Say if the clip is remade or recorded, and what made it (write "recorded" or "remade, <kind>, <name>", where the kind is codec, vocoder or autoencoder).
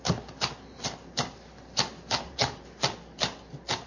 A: recorded